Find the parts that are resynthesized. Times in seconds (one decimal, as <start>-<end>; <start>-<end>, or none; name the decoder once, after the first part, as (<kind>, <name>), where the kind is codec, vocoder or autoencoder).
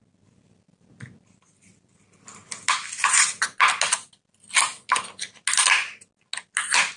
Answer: none